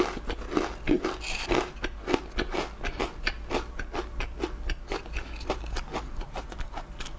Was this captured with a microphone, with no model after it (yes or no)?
yes